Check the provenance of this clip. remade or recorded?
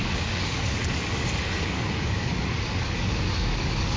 remade